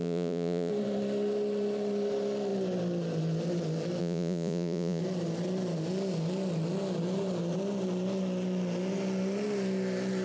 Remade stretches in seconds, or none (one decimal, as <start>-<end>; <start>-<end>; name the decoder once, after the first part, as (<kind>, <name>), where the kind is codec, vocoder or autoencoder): 0.0-0.7 (vocoder, Vocos); 4.0-5.0